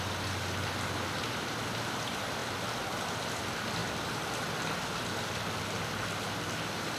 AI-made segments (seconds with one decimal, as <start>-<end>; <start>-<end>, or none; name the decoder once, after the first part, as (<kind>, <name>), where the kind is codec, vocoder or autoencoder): 0.0-2.4 (vocoder, BigVGAN v2); 3.4-7.0